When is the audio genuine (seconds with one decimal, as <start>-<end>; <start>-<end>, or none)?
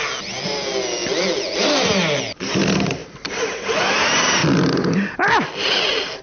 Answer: 0.0-3.0; 3.8-6.2